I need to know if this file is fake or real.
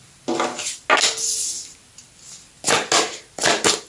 real